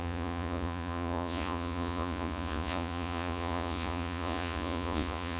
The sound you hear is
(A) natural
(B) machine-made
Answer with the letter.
B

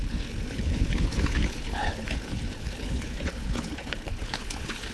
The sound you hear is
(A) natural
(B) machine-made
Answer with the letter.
B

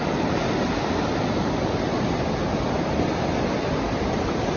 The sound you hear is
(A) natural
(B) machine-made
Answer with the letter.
A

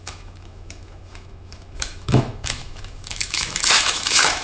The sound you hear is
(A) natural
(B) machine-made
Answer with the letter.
B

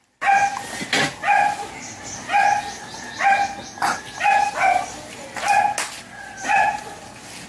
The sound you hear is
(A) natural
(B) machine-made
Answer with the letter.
A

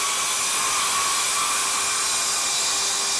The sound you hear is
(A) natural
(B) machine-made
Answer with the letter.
A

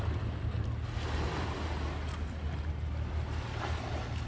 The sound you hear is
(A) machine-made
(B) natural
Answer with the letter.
B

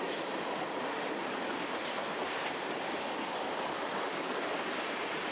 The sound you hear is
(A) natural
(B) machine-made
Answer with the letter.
A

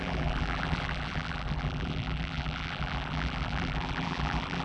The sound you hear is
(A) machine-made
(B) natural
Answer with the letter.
A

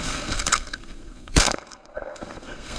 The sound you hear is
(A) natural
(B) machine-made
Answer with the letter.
B